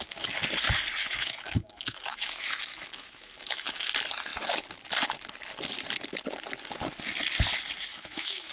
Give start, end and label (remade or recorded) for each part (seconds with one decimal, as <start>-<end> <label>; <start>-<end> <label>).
0.0-1.0 recorded; 1.0-3.9 remade; 3.9-7.9 recorded; 7.9-8.5 remade